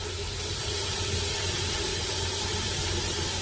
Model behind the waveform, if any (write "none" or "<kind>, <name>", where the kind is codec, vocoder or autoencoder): vocoder, BigVGAN v2